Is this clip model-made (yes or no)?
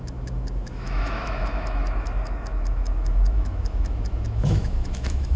yes